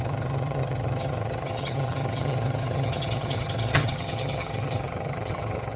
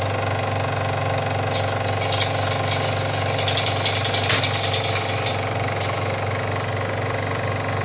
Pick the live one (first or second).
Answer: second